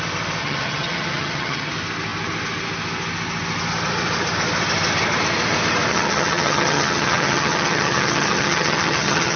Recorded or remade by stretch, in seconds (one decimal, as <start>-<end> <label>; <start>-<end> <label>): 0.0-0.4 recorded; 0.4-1.7 remade; 1.7-5.9 recorded; 5.9-9.4 remade